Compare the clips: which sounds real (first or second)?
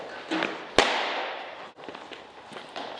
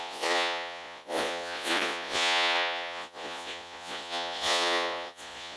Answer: first